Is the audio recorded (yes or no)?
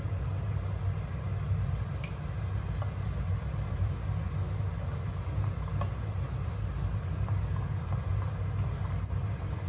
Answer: yes